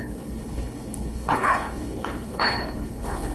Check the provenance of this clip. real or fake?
fake